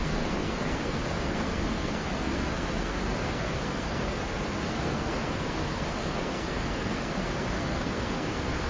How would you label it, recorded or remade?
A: remade